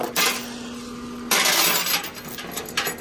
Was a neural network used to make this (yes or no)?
no